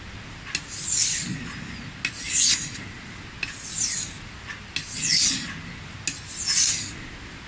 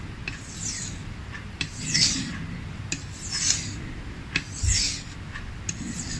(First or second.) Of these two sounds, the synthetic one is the second